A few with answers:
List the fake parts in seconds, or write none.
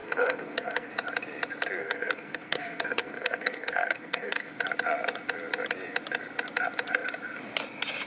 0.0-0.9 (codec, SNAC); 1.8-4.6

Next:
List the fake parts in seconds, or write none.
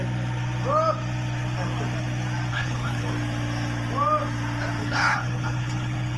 2.5-3.1 (codec, HILCodec); 4.8-6.2